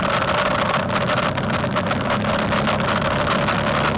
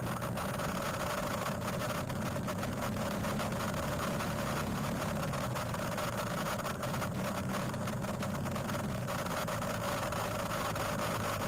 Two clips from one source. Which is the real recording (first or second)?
first